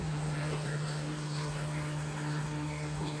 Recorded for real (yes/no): no